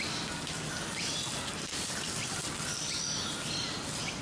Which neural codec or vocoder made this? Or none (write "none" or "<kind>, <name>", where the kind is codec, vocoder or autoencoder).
none